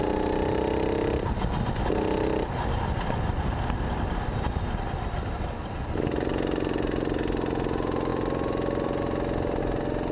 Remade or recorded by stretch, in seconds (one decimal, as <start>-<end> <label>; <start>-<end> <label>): 0.0-10.1 recorded